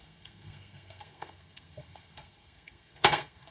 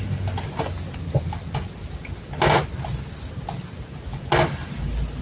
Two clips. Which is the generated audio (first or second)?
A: first